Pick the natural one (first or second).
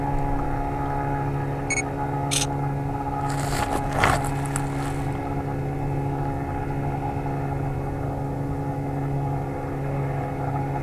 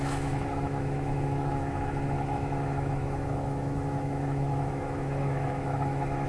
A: first